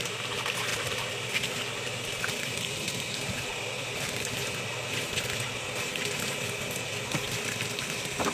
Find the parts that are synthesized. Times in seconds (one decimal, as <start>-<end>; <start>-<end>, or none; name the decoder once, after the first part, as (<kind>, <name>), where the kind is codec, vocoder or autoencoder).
0.7-4.6 (vocoder, BigVGAN v2)